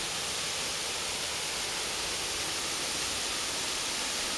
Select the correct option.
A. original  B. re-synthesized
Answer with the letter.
A